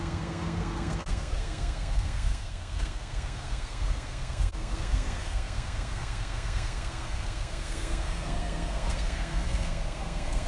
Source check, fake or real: fake